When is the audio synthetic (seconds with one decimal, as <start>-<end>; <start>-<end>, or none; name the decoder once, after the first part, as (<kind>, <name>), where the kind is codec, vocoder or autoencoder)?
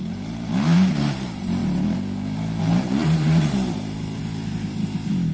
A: 0.0-1.6 (vocoder, BigVGAN v2); 2.6-5.3